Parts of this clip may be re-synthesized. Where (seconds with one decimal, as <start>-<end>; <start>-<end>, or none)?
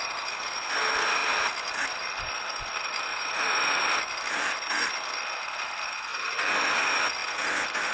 3.1-3.8